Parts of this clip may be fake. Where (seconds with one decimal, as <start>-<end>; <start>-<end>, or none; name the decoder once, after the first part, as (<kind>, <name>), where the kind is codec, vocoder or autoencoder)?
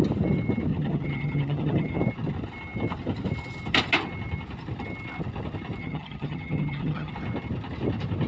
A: 0.7-2.0 (vocoder, HiFi-GAN); 5.8-7.1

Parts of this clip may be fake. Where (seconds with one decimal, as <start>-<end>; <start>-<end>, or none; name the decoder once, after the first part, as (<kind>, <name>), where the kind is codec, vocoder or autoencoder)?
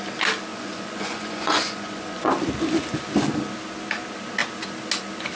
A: 0.5-2.3 (vocoder, Vocos)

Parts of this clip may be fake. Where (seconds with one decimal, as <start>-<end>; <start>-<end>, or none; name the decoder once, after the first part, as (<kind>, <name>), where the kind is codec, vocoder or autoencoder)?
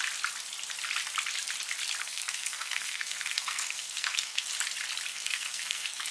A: 2.0-4.5 (codec, SNAC); 5.1-6.1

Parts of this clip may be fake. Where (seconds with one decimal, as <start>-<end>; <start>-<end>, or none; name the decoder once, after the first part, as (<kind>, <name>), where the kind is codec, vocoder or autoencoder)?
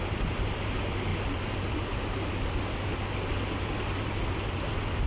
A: none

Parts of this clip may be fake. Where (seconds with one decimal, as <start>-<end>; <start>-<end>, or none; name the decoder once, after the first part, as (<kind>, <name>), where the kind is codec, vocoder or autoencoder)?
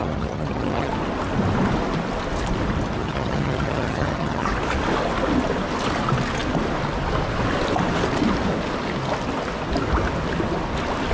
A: 0.0-0.9 (vocoder, HiFi-GAN); 3.0-4.5